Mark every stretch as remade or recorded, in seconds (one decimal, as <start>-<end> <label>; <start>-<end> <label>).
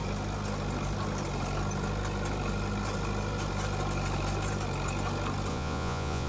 0.0-5.5 recorded; 5.5-6.3 remade